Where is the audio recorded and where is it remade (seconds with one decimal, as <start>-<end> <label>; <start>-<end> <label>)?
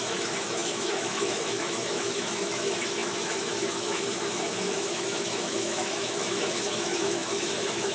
0.0-7.9 remade